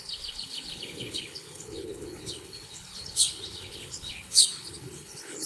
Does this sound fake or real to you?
fake